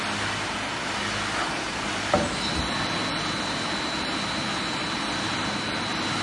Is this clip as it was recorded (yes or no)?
yes